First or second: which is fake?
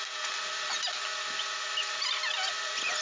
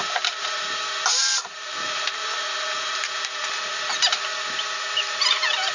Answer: second